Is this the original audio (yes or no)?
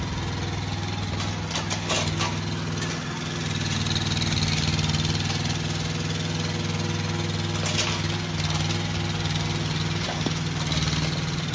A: yes